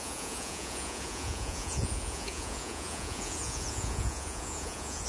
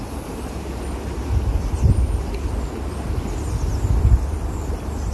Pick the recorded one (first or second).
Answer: second